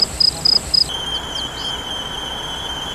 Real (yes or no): yes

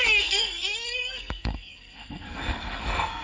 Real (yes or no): no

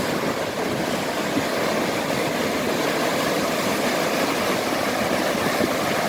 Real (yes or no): yes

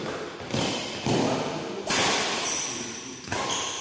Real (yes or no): yes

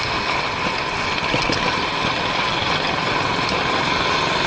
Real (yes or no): yes